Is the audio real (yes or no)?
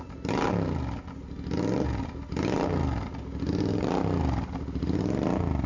yes